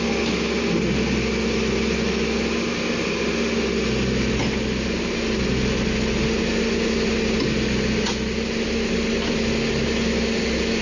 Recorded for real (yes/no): yes